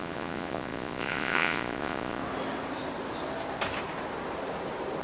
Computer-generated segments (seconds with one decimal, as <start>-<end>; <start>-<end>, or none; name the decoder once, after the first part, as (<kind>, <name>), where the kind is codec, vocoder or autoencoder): 0.0-2.2 (vocoder, Vocos)